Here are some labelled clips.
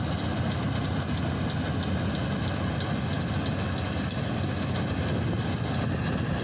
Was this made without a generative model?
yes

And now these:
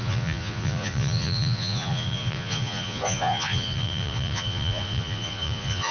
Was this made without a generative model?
no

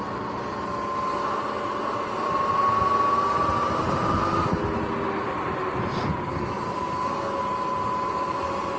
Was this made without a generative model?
yes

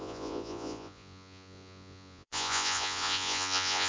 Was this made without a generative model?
no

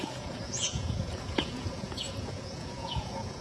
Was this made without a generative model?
no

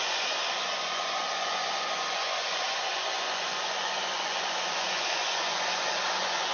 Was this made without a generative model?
no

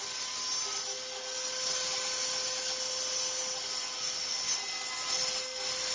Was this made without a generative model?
yes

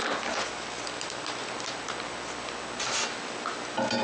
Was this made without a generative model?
yes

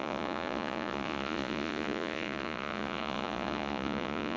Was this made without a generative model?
no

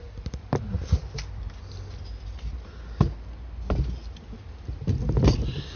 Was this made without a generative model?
yes